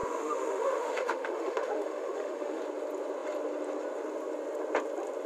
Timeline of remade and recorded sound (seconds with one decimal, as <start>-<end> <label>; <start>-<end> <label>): 0.0-2.6 remade; 2.6-5.3 recorded